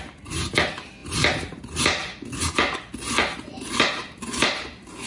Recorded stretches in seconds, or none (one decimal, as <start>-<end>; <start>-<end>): 0.0-5.1